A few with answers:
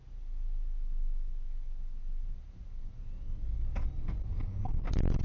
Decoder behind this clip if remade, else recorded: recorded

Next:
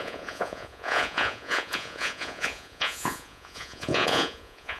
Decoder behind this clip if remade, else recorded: remade, vocoder, Vocos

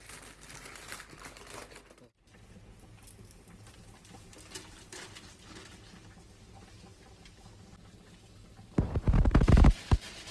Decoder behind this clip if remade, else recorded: recorded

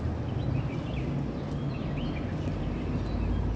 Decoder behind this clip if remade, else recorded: recorded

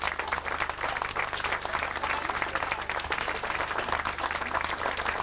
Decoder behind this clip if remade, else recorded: recorded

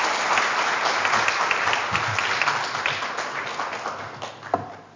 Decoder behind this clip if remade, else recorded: recorded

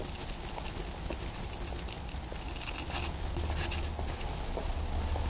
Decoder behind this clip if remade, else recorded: recorded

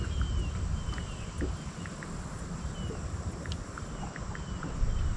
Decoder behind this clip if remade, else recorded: recorded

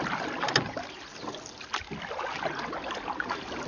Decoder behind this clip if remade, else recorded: recorded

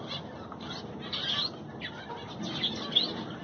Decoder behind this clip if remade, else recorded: recorded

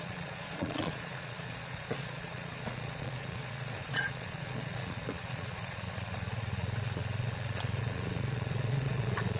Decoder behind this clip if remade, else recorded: remade, vocoder, Vocos